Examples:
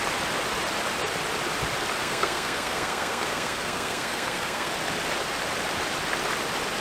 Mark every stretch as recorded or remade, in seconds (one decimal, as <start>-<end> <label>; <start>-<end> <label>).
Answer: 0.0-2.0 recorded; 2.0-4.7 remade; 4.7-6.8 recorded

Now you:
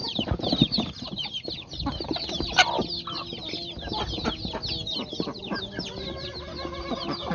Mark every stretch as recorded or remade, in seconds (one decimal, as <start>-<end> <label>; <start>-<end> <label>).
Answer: 0.0-2.7 remade; 2.7-7.3 recorded

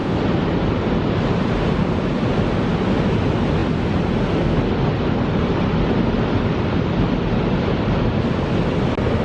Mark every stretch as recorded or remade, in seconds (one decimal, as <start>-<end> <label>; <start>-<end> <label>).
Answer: 0.0-9.2 recorded

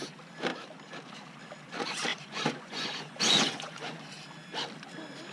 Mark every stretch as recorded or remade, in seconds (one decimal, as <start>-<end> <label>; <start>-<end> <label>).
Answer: 0.0-2.1 recorded; 2.1-4.0 remade; 4.0-5.3 recorded

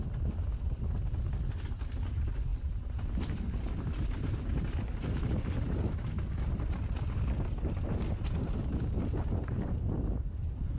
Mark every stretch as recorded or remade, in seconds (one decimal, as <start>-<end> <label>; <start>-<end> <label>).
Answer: 0.0-10.8 recorded